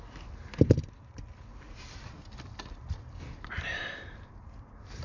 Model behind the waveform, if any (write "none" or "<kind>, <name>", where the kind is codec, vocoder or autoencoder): none